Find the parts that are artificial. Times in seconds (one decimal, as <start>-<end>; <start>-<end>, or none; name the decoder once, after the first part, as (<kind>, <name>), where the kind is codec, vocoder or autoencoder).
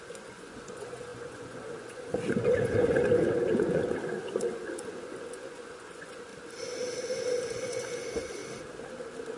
0.0-6.3 (vocoder, Vocos); 7.5-8.4